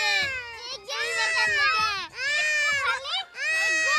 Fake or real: real